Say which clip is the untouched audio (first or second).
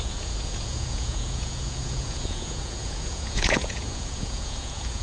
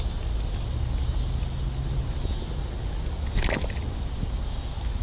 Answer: second